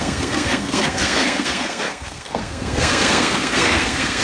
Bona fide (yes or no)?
no